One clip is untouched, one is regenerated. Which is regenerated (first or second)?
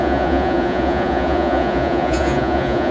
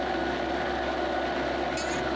first